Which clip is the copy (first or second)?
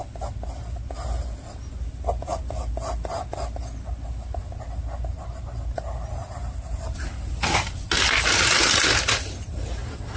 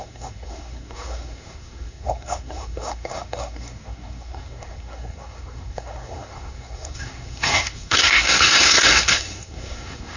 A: second